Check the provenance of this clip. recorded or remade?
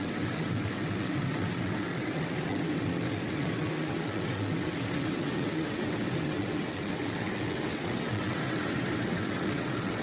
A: remade